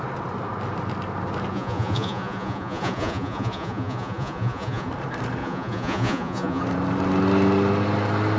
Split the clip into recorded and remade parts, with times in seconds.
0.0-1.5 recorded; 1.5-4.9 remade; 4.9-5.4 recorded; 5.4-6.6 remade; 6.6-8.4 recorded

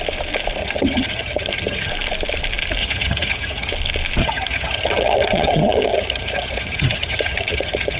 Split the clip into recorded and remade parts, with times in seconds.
0.0-0.6 recorded; 0.6-1.9 remade; 1.9-2.8 recorded; 2.8-3.7 remade; 3.7-4.2 recorded; 4.2-8.0 remade

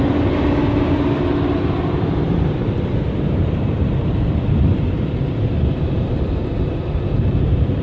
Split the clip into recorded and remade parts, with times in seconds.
0.0-1.5 recorded; 1.5-6.1 remade; 6.1-7.8 recorded

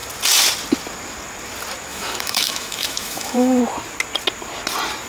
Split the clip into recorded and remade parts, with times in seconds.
0.0-1.9 recorded; 1.9-3.6 remade; 3.6-5.1 recorded

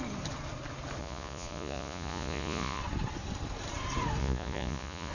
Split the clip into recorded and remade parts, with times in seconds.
0.0-1.0 recorded; 1.0-2.8 remade; 2.8-4.2 recorded; 4.2-5.1 remade

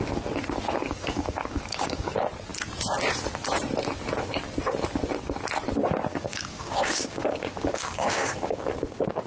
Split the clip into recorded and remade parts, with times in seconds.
0.0-0.8 recorded; 0.8-2.1 remade; 2.1-6.1 recorded; 6.1-8.7 remade; 8.7-9.3 recorded

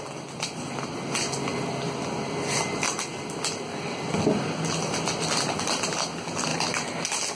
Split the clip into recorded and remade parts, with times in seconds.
0.0-1.5 recorded; 1.5-2.9 remade; 2.9-7.3 recorded

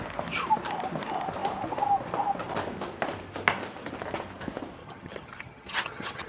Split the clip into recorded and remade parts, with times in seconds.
0.0-4.8 recorded; 4.8-6.3 remade